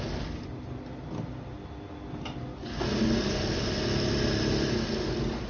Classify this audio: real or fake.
real